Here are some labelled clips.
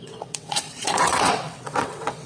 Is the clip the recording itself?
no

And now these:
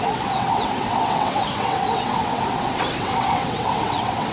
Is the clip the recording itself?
no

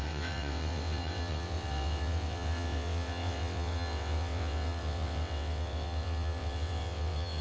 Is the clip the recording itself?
no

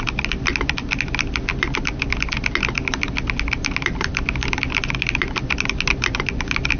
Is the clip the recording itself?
yes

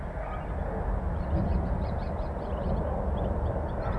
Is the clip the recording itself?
yes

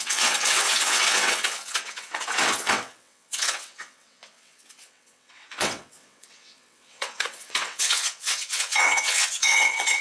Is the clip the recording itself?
no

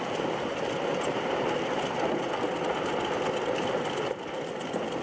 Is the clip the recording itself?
yes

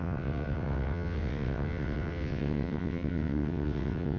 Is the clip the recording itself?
no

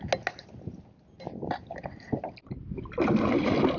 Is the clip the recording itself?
yes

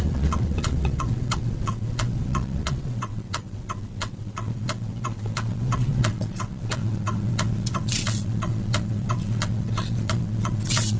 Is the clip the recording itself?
no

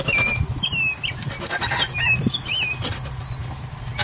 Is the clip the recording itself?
yes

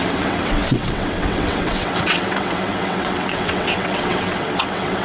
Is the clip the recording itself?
no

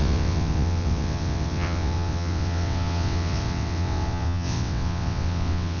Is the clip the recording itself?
no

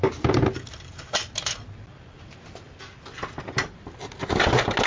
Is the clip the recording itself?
yes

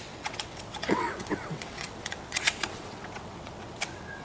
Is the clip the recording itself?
no